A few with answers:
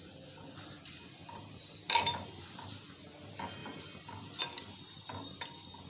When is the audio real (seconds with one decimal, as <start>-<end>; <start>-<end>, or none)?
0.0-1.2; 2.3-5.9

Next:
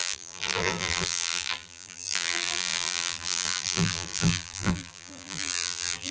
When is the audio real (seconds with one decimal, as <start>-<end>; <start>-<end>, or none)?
none

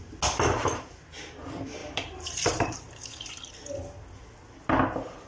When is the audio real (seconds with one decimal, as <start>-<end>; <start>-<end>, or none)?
0.0-1.8; 3.3-5.3